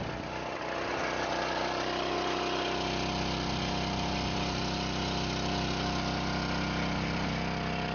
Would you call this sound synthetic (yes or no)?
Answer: no